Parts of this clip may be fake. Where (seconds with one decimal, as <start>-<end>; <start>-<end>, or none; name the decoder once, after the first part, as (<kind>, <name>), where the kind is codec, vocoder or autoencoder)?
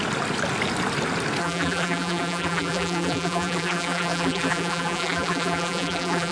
1.4-6.3 (vocoder, BigVGAN v2)